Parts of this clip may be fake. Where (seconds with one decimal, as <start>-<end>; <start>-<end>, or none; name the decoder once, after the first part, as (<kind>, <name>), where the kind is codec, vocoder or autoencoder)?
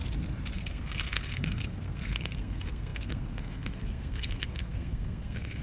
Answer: 0.7-5.6 (codec, SNAC)